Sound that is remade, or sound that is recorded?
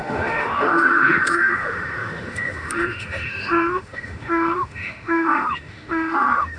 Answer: remade